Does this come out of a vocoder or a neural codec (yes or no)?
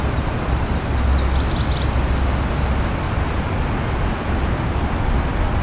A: no